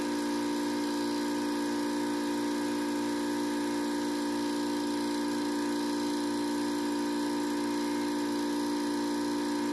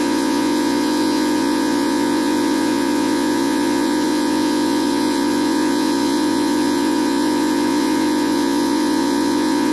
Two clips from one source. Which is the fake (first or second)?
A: second